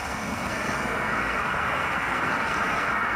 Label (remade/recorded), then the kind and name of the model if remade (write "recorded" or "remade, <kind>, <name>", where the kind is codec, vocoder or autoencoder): remade, codec, SNAC